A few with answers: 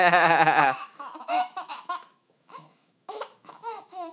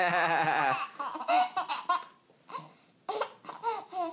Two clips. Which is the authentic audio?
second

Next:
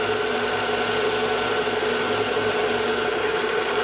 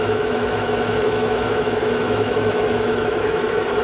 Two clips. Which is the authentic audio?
first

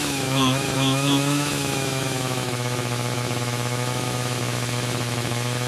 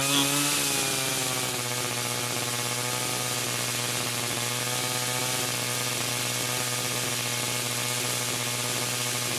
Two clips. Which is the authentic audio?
second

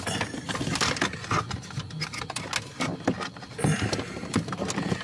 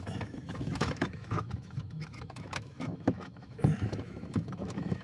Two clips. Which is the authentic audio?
first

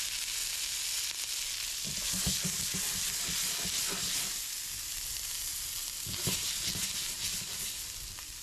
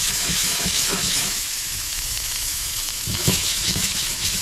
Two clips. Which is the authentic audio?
first